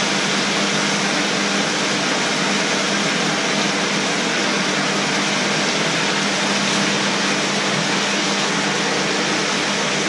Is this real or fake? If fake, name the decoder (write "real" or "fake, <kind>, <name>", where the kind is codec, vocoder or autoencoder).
real